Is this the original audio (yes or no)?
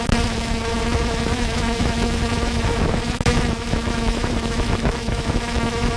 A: no